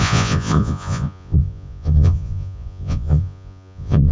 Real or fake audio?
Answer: fake